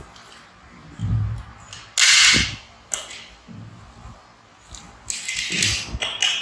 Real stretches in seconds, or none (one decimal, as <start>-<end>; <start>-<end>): 0.0-6.4